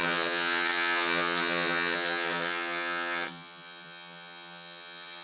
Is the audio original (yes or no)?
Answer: no